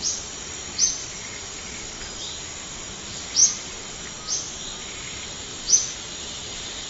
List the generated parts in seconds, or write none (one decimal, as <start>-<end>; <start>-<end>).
1.0-2.0; 5.5-6.9